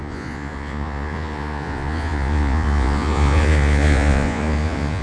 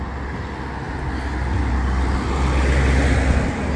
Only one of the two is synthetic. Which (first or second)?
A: first